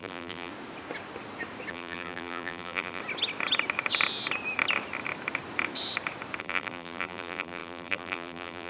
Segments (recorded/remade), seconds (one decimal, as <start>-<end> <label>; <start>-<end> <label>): 0.0-0.5 remade; 0.5-1.7 recorded; 1.7-3.0 remade; 3.0-6.4 recorded; 6.4-8.7 remade